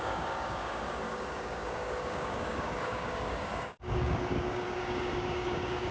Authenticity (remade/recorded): remade